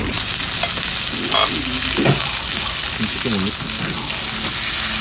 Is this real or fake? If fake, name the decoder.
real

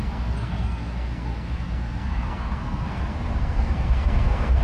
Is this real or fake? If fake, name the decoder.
fake, codec, SNAC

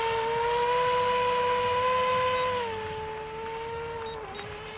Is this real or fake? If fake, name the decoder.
real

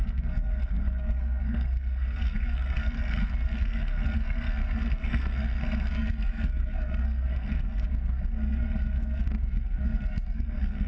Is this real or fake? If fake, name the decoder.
fake, codec, SNAC